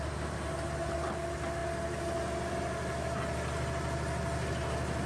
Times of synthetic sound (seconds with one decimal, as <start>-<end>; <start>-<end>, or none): none